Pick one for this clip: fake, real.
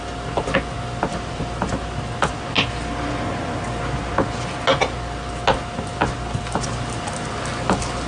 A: real